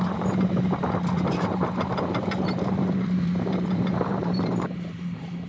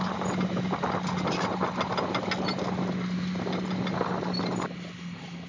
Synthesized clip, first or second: first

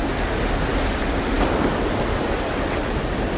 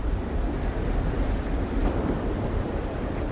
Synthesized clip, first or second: second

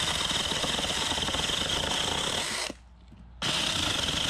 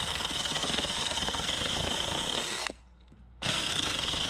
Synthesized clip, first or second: second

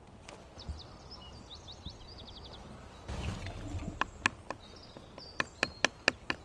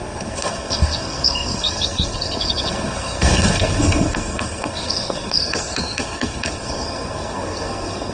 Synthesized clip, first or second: second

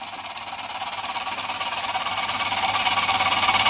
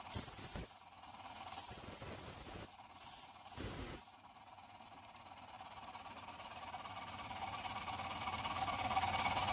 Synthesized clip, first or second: second